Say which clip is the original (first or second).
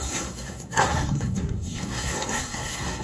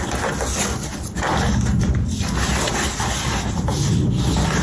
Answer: second